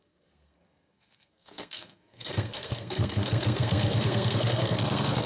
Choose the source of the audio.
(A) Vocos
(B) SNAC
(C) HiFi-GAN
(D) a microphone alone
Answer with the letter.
B